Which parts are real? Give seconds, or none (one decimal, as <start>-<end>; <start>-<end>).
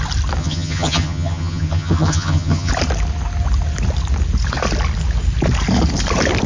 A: 0.0-0.4; 2.7-6.5